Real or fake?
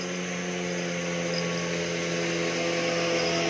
real